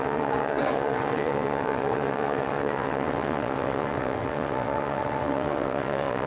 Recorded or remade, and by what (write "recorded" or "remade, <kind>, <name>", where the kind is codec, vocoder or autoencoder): remade, vocoder, WaveNeXt